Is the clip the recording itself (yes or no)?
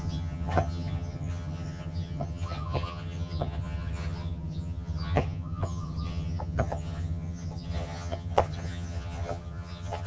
no